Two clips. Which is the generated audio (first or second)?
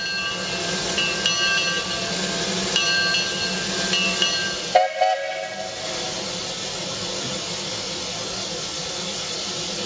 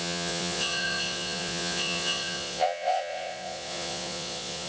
second